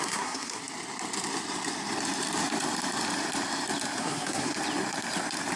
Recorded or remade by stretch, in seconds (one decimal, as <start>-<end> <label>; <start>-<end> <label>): 0.0-0.6 remade; 0.6-4.0 recorded; 4.0-4.5 remade; 4.5-5.6 recorded

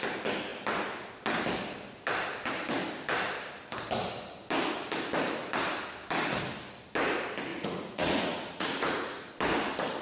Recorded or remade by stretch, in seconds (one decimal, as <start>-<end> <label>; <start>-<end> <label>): 0.0-7.5 recorded; 7.5-9.3 remade; 9.3-10.0 recorded

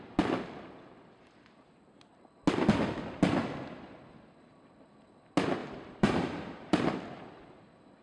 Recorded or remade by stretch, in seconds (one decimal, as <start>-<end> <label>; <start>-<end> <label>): 0.0-5.6 recorded; 5.6-7.4 remade; 7.4-8.0 recorded

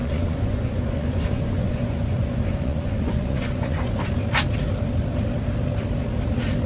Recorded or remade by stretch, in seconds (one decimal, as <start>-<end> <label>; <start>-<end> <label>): 0.0-4.0 remade; 4.0-6.7 recorded

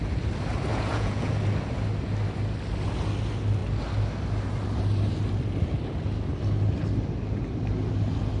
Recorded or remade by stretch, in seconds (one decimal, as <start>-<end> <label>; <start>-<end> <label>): 0.0-0.7 recorded; 0.7-1.3 remade; 1.3-8.4 recorded

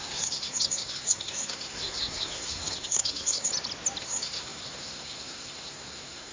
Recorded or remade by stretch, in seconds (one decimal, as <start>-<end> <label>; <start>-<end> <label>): 0.0-3.5 remade; 3.5-4.0 recorded; 4.0-6.3 remade